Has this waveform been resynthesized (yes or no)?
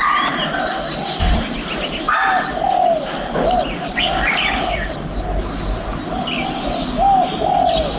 no